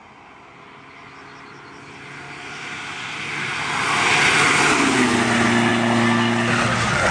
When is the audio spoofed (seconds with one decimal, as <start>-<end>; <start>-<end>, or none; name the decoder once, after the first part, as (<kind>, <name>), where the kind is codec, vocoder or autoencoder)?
none